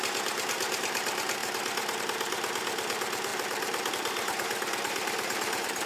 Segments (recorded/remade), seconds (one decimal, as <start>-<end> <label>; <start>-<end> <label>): 0.0-1.4 remade; 1.4-2.0 recorded; 2.0-5.9 remade